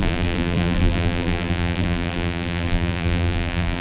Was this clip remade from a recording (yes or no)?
yes